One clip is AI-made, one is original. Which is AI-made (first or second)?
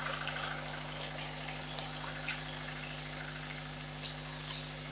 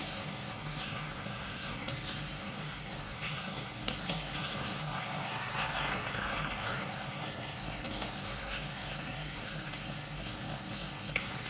second